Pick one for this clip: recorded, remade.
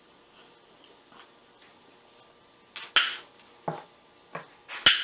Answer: recorded